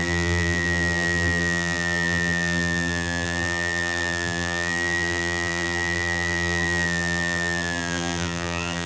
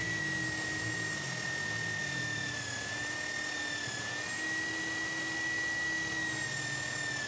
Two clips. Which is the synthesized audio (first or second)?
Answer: first